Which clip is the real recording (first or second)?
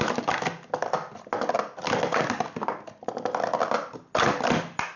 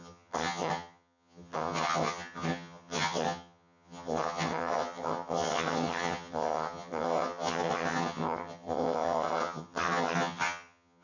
first